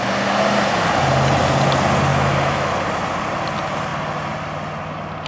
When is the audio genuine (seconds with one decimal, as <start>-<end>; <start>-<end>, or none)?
0.0-2.1; 2.7-5.3